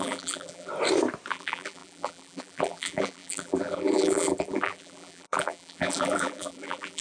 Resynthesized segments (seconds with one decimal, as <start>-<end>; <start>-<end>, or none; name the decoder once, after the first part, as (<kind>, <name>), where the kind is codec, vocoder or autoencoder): 0.0-0.7 (vocoder, BigVGAN v2); 1.3-7.0